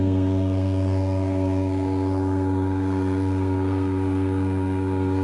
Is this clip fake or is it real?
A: fake